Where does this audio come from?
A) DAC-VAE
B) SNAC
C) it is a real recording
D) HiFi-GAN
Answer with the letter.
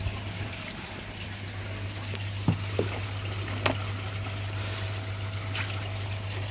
C